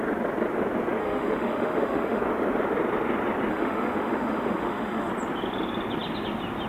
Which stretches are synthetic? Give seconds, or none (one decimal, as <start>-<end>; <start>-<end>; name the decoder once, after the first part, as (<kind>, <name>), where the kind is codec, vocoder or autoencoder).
1.0-2.2 (autoencoder, DAC-VAE); 3.5-5.1